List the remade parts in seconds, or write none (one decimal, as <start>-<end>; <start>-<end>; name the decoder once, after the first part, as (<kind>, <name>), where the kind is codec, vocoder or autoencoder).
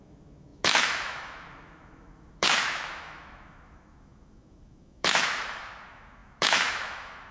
0.0-7.3 (autoencoder, DAC-VAE)